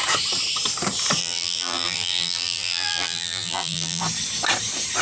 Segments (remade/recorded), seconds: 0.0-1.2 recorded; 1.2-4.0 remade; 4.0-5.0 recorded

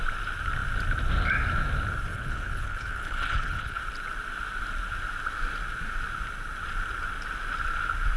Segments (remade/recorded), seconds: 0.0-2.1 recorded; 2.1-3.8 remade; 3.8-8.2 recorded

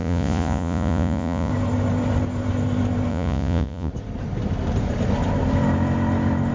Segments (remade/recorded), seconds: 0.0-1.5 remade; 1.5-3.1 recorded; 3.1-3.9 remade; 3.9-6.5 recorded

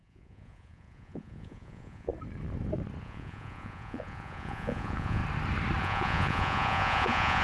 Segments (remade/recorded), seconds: 0.0-2.1 remade; 2.1-3.0 recorded; 3.0-5.2 remade; 5.2-5.8 recorded; 5.8-7.4 remade